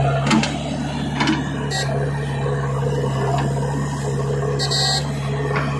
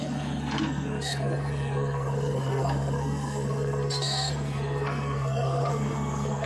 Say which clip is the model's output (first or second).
second